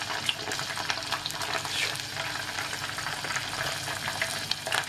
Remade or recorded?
recorded